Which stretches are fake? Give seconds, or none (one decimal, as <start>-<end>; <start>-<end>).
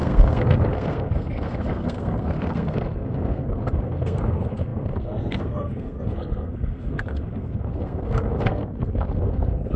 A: 0.0-9.8